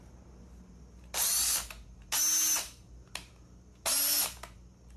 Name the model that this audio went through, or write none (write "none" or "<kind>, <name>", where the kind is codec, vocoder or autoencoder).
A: none